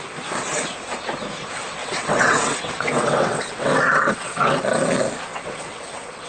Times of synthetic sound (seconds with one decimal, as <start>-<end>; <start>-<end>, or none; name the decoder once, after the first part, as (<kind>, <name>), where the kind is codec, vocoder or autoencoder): 1.8-4.6 (vocoder, WaveNeXt); 5.3-6.3